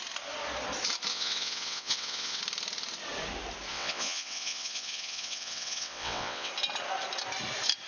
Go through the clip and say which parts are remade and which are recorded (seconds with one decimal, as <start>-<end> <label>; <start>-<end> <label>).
0.0-1.1 recorded; 1.1-2.4 remade; 2.4-3.7 recorded; 3.7-6.5 remade; 6.5-7.9 recorded

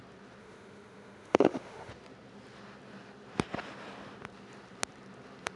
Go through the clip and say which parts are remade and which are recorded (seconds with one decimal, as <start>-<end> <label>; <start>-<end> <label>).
0.0-0.4 recorded; 0.4-1.9 remade; 1.9-5.6 recorded

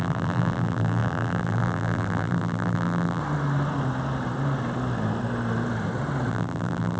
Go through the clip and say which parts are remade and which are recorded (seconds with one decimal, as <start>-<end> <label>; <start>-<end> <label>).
0.0-3.2 remade; 3.2-6.3 recorded; 6.3-7.0 remade

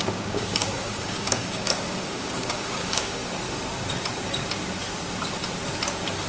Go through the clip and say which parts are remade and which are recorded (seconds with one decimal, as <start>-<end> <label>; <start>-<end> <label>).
0.0-3.2 remade; 3.2-6.3 recorded